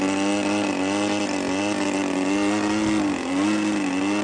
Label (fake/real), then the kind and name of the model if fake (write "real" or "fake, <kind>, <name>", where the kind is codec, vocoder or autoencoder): real